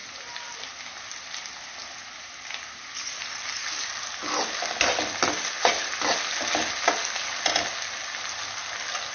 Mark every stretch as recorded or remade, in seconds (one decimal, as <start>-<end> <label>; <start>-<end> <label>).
0.0-9.1 recorded